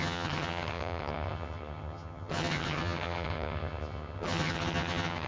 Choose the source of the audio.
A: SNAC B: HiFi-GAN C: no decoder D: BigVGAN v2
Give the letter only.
B